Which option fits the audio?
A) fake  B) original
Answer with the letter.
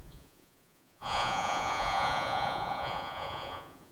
A